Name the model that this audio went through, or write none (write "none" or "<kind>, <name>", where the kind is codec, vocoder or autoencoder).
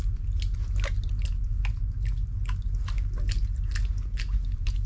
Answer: none